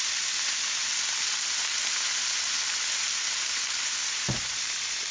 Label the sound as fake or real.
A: fake